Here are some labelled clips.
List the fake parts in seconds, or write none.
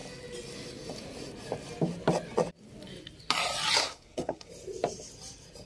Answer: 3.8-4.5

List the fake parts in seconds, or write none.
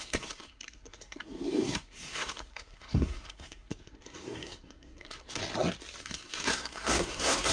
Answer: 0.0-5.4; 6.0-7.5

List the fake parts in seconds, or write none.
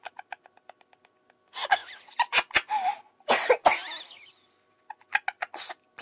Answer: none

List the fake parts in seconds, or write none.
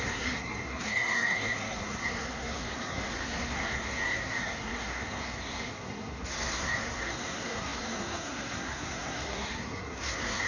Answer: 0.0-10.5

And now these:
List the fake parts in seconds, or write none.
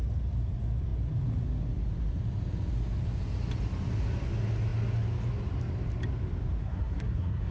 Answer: 6.6-7.5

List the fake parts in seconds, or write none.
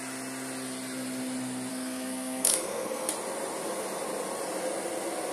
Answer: 1.7-3.1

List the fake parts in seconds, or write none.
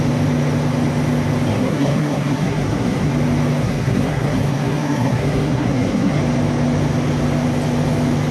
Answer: 1.5-3.1; 3.6-6.2